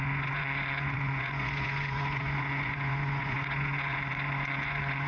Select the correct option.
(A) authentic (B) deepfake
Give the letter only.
B